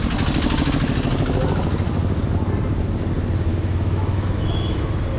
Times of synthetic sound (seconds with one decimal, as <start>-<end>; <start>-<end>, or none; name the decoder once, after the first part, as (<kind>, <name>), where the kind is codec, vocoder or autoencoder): 3.5-4.8 (autoencoder, DAC-VAE)